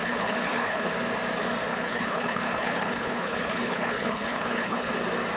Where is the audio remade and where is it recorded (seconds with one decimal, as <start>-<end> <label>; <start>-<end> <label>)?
0.0-0.9 remade; 0.9-1.7 recorded; 1.7-4.9 remade; 4.9-5.4 recorded